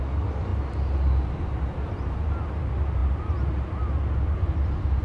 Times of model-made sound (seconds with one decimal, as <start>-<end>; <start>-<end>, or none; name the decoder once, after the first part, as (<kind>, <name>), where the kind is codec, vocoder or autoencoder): none